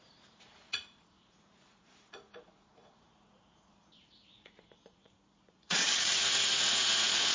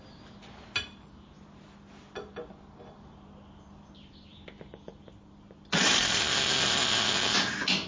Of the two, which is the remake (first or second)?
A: first